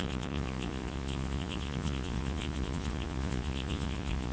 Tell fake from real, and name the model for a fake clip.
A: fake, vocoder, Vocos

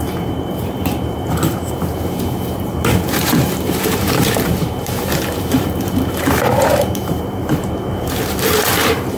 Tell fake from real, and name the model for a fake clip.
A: fake, vocoder, BigVGAN v2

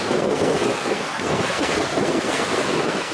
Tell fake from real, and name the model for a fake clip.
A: fake, codec, SNAC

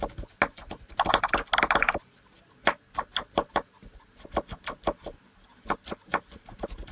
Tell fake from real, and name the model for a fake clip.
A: real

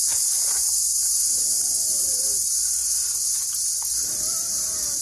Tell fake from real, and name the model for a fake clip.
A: real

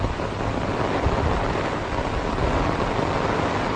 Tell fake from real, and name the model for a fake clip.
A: real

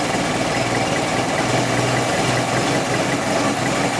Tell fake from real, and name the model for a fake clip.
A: real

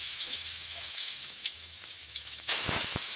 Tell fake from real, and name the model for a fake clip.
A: fake, autoencoder, DAC-VAE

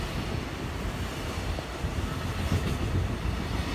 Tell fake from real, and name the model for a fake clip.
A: fake, vocoder, BigVGAN v2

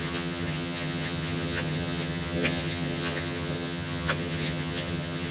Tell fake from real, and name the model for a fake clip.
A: fake, vocoder, HiFi-GAN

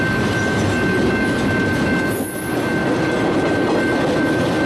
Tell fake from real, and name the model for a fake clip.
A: real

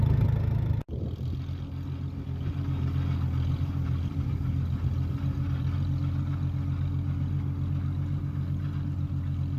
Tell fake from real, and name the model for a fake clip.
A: real